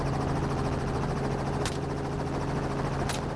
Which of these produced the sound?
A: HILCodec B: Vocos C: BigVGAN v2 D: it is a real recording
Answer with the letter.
D